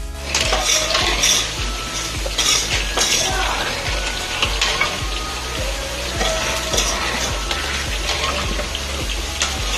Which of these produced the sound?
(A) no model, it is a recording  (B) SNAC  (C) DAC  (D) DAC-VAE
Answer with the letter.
A